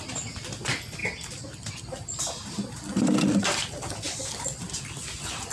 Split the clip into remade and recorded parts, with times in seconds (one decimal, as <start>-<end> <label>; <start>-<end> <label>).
0.0-5.5 recorded